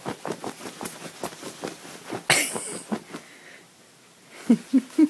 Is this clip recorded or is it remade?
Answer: recorded